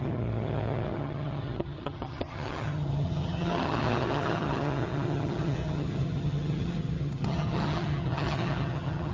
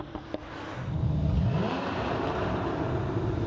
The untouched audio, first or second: second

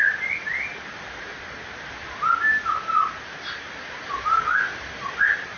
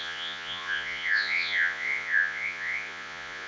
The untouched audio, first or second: first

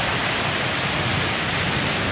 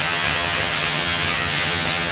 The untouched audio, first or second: first